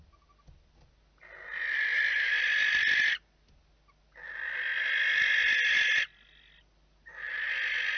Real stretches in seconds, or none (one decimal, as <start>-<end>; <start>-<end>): 0.0-8.0